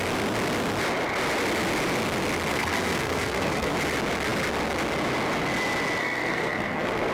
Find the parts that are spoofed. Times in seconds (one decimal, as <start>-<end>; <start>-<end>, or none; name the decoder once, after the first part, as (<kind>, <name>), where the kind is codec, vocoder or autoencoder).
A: 2.5-3.7 (codec, SNAC); 6.0-7.1